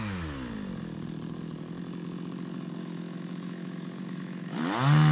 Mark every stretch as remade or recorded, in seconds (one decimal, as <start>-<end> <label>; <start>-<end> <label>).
0.0-2.8 recorded; 2.8-4.6 remade; 4.6-5.1 recorded